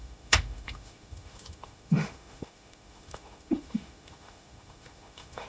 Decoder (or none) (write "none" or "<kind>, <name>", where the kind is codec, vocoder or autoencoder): autoencoder, DAC-VAE